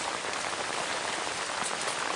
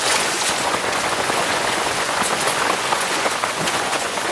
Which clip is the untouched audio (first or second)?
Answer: first